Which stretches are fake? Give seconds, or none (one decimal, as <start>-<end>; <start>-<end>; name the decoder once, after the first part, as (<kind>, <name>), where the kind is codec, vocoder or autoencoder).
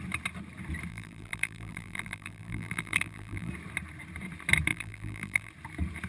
0.9-3.5 (vocoder, BigVGAN v2); 4.7-5.5